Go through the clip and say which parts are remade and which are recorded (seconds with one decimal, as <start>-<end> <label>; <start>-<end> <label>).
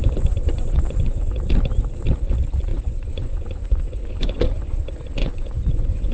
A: 0.0-1.3 remade; 1.3-2.7 recorded; 2.7-4.3 remade; 4.3-5.2 recorded; 5.2-6.1 remade